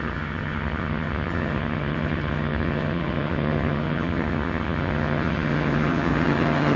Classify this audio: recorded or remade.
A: remade